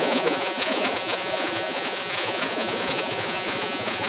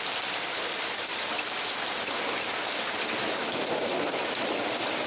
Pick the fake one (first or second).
first